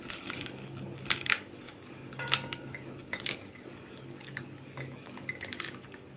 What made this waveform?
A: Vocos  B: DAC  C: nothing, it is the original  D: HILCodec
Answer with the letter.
B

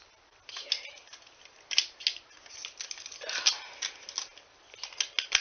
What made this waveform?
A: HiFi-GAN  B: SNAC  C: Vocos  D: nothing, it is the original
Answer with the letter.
D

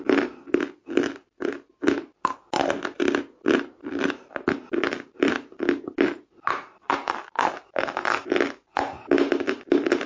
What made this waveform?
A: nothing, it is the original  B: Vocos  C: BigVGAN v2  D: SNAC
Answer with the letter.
A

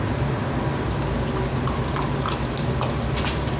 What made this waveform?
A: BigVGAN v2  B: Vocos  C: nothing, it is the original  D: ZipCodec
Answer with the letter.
C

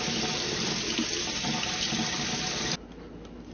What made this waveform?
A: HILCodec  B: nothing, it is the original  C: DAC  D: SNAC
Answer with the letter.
B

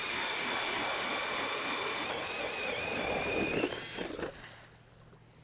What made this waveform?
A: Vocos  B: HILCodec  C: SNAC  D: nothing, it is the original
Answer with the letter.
D